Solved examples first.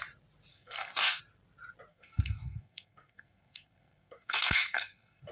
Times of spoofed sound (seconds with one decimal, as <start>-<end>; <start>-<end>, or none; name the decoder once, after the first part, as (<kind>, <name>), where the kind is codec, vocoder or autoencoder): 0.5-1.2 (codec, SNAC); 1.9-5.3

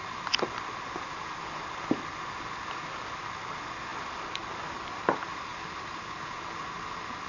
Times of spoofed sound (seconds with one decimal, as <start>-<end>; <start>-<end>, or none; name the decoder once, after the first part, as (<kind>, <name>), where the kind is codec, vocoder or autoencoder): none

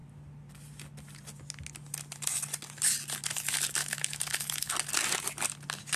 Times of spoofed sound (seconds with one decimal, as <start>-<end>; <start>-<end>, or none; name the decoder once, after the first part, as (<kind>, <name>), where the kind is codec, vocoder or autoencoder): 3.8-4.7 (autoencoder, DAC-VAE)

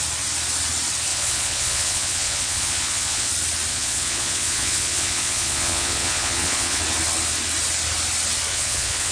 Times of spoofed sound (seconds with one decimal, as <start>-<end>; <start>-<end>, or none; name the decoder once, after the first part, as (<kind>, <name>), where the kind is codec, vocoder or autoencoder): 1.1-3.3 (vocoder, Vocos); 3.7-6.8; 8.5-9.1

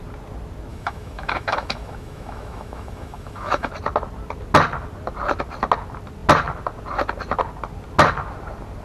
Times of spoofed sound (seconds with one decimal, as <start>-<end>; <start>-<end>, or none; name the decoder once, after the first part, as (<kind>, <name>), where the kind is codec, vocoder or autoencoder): 0.7-3.7 (autoencoder, DAC-VAE)

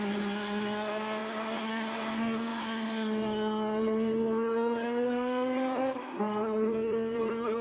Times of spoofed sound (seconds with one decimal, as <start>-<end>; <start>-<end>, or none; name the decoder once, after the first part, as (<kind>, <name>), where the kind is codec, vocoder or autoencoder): 0.0-7.6 (codec, SNAC)

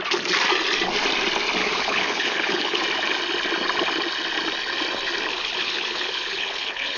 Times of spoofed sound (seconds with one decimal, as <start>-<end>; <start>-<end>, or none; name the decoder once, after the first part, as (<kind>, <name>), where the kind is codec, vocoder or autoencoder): 1.6-2.8 (codec, HILCodec); 5.3-7.0